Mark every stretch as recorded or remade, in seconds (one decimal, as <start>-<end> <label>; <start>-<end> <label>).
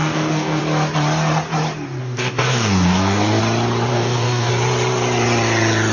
0.0-0.6 remade; 0.6-2.0 recorded; 2.0-3.4 remade; 3.4-3.9 recorded; 3.9-4.5 remade; 4.5-5.9 recorded